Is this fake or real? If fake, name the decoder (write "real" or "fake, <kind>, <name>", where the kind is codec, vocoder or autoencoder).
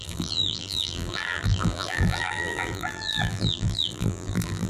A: fake, vocoder, BigVGAN v2